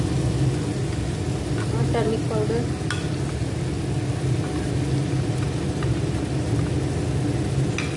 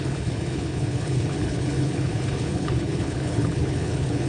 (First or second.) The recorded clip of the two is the first